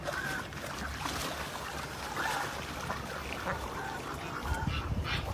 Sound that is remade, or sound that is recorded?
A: recorded